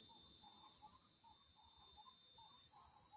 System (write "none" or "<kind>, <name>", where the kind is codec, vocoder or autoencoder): none